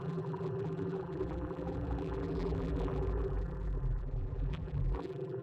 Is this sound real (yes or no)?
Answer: no